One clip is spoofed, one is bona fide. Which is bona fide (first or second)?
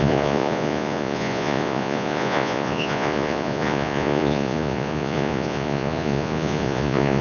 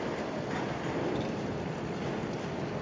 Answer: second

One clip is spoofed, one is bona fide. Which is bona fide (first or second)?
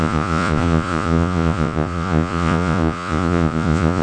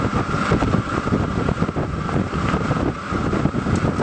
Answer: second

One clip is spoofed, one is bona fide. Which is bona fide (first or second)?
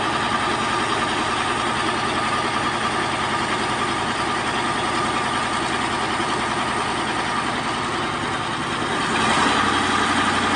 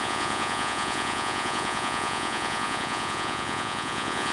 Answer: first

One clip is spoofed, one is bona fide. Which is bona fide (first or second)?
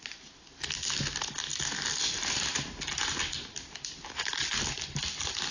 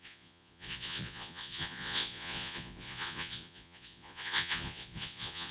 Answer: first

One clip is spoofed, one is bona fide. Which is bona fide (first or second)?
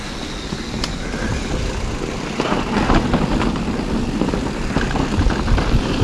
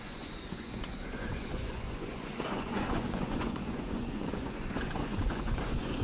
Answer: first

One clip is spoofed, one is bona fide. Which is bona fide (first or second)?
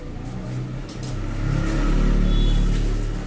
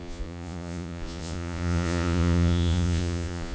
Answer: first